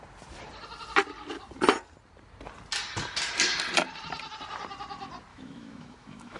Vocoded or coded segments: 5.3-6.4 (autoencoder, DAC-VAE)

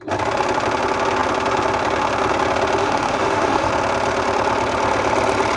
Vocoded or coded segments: 2.8-3.7 (autoencoder, DAC-VAE)